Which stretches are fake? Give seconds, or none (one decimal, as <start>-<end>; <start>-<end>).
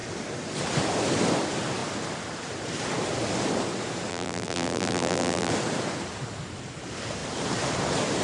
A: 4.1-5.5